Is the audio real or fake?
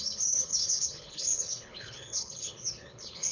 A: fake